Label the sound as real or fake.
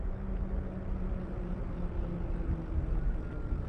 real